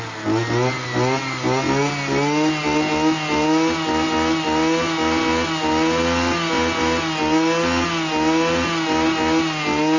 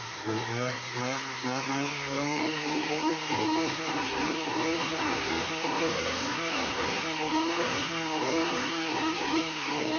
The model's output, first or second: second